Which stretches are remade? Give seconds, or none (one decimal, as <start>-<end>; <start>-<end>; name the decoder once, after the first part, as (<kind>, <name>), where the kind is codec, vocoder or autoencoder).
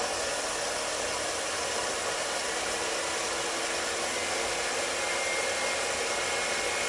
none